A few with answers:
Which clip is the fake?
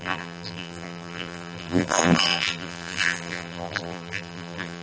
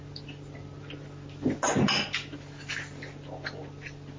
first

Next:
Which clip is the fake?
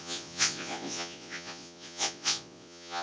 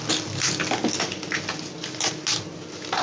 first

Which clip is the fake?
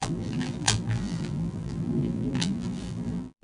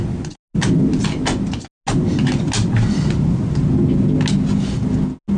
first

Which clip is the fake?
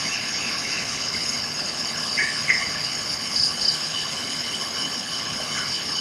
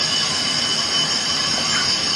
first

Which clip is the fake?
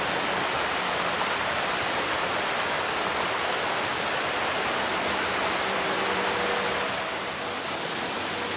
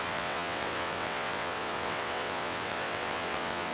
second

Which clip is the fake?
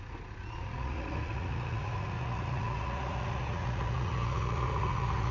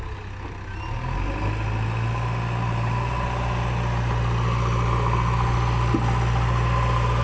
first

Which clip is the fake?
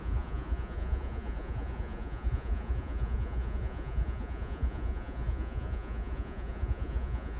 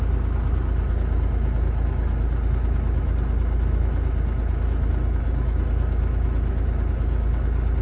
first